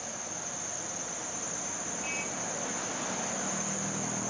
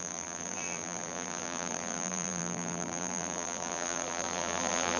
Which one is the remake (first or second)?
second